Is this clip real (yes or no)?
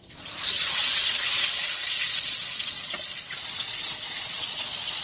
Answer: no